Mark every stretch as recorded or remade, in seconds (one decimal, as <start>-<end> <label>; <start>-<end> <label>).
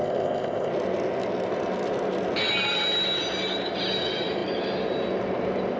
0.0-0.7 remade; 0.7-5.8 recorded